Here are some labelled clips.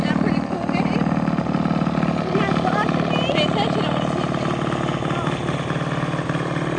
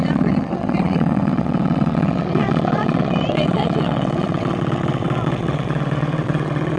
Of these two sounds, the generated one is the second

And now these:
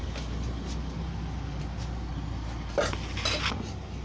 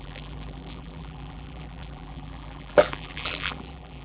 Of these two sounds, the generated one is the second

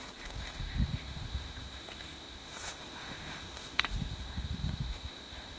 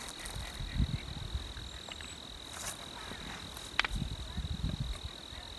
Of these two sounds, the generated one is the first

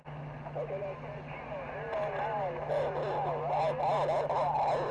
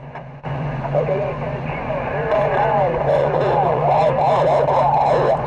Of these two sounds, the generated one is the second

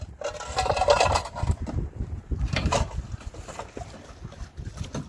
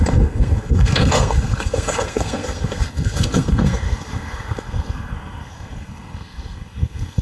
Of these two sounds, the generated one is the second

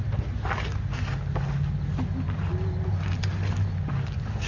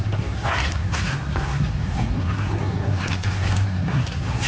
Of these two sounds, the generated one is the second